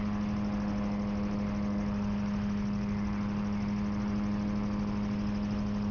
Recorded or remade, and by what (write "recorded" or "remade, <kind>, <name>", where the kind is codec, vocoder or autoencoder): recorded